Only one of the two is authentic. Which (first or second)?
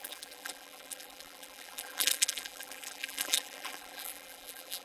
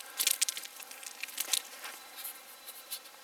second